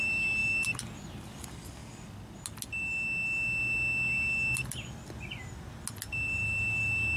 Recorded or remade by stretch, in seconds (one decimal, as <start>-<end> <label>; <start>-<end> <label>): 0.0-1.8 remade; 1.8-6.1 recorded; 6.1-7.2 remade